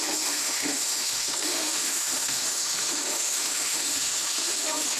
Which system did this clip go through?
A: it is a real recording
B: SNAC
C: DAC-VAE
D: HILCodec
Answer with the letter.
C